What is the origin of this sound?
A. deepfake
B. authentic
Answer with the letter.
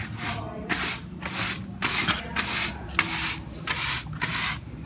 B